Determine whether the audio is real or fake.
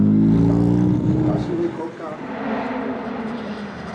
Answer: real